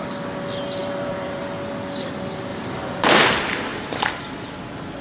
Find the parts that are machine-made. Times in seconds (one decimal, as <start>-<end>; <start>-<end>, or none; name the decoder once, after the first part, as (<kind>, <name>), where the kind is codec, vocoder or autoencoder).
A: 0.8-1.4 (vocoder, BigVGAN v2); 2.5-3.1; 3.7-4.6